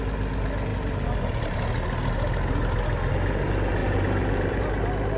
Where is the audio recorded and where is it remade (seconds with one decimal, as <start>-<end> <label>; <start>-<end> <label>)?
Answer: 0.0-3.8 recorded; 3.8-4.6 remade; 4.6-5.2 recorded

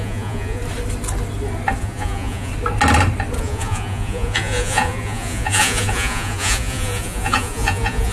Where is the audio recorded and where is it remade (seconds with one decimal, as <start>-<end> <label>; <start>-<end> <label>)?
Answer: 0.0-0.6 remade; 0.6-1.8 recorded; 1.8-2.5 remade; 2.5-3.4 recorded; 3.4-8.1 remade

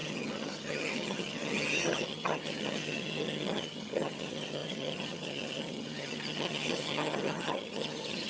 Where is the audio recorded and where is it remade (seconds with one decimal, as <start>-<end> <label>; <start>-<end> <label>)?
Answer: 0.0-8.3 remade

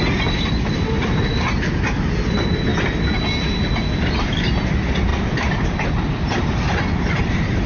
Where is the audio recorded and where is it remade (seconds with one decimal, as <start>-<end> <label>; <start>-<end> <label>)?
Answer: 0.0-5.1 recorded; 5.1-7.7 remade

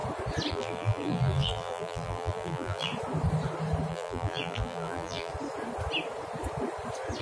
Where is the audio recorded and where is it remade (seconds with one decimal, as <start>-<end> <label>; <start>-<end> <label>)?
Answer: 0.0-0.5 recorded; 0.5-2.9 remade; 2.9-3.9 recorded; 3.9-5.3 remade; 5.3-7.2 recorded

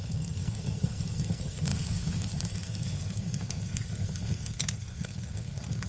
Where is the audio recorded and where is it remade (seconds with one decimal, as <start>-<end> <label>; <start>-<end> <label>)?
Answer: 0.0-5.9 remade

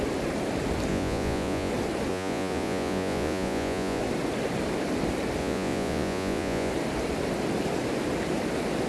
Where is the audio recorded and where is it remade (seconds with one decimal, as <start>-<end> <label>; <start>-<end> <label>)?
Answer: 0.0-0.9 recorded; 0.9-1.7 remade; 1.7-2.1 recorded; 2.1-4.0 remade; 4.0-5.4 recorded; 5.4-6.7 remade; 6.7-8.9 recorded